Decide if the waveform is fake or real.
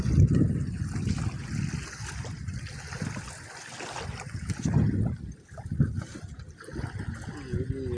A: real